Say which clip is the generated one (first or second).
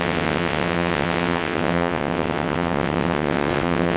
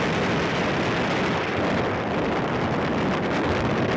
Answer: first